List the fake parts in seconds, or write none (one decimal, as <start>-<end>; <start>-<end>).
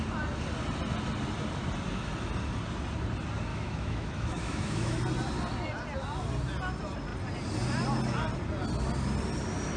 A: 3.5-5.0